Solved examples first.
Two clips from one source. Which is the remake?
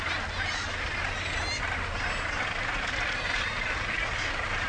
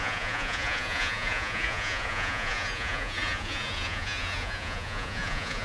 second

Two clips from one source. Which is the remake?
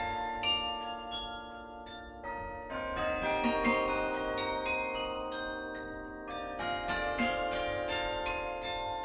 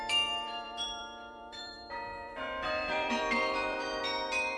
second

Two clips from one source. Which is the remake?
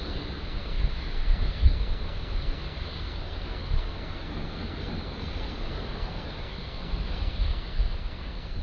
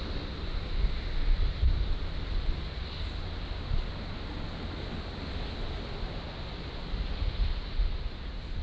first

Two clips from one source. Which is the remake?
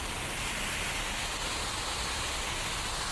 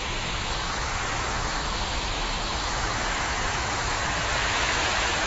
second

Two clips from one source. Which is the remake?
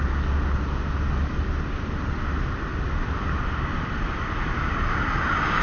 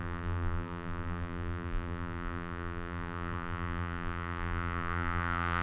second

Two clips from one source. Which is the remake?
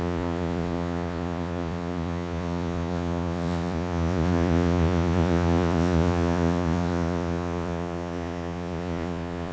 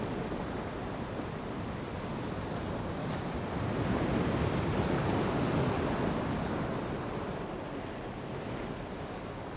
first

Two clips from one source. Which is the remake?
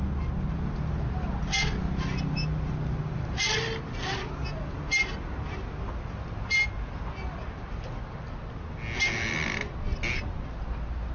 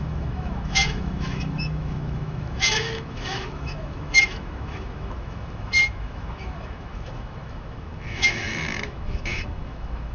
second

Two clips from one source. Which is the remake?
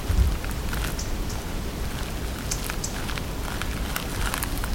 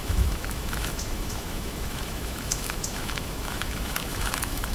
second